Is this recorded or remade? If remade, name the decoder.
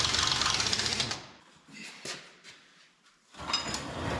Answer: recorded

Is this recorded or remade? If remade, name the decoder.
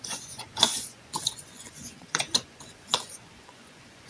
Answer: remade, vocoder, Vocos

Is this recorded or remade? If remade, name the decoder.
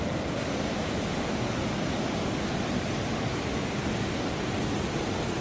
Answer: recorded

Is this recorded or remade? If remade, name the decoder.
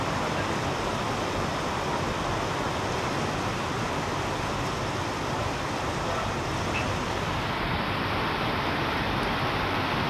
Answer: remade, vocoder, BigVGAN v2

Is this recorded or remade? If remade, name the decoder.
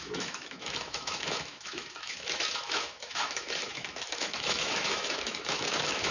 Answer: remade, autoencoder, DAC-VAE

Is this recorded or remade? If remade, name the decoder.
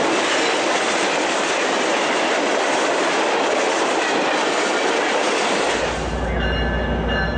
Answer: recorded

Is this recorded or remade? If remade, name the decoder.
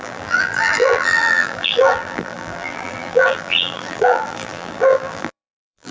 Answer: remade, vocoder, BigVGAN v2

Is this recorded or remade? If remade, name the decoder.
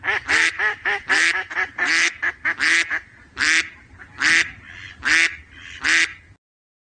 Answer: recorded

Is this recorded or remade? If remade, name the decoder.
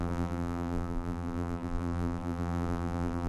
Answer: remade, vocoder, BigVGAN v2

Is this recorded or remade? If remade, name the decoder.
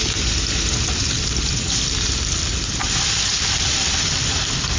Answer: recorded